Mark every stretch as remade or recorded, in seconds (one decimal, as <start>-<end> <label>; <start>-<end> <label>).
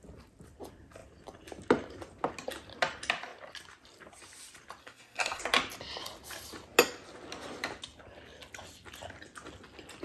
0.0-4.8 recorded; 4.8-5.4 remade; 5.4-10.0 recorded